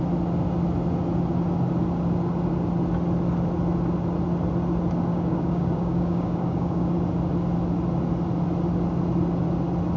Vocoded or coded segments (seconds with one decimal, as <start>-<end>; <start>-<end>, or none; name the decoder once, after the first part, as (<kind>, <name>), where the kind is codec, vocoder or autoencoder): 5.1-6.9 (codec, DAC)